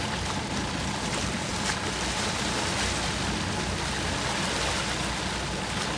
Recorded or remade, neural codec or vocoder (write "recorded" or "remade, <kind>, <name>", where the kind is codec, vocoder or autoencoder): recorded